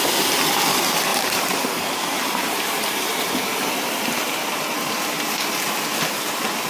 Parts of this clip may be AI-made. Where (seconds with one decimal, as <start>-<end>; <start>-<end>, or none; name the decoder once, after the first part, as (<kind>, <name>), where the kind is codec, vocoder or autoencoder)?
1.1-4.9 (vocoder, BigVGAN v2)